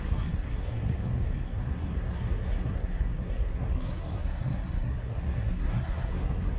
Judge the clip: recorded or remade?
remade